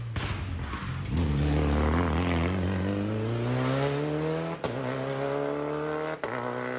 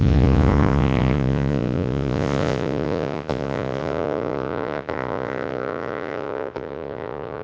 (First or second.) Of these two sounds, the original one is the first